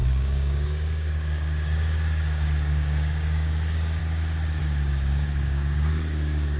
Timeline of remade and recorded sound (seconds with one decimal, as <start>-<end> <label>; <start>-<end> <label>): 0.0-4.0 remade; 4.0-4.6 recorded; 4.6-6.6 remade